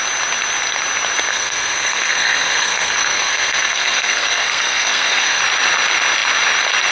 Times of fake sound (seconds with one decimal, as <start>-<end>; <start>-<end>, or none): 1.3-5.4